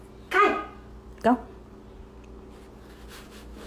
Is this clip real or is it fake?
real